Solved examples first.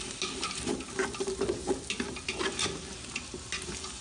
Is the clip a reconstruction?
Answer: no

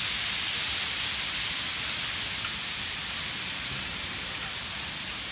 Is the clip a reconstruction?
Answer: no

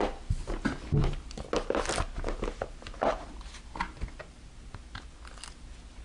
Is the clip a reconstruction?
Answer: no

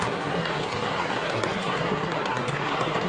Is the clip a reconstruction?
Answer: yes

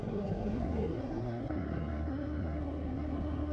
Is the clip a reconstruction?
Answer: yes